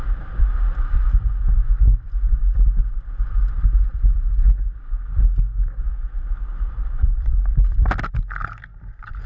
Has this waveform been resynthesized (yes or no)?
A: no